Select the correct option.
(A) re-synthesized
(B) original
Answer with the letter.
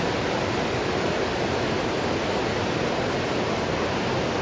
B